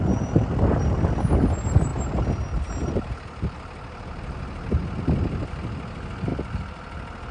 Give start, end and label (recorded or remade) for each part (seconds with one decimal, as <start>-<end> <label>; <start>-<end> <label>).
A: 0.0-7.3 recorded